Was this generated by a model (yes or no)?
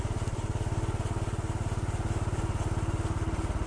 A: no